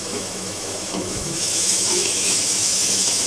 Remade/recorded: remade